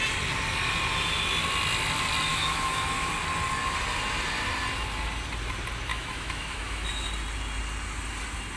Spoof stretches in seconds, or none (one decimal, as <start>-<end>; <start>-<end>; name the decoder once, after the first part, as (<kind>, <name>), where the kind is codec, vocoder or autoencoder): 2.3-3.1 (autoencoder, DAC-VAE); 5.9-6.9